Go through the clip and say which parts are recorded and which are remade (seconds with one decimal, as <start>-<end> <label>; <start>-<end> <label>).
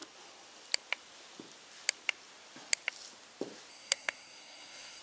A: 0.0-3.7 recorded; 3.7-5.0 remade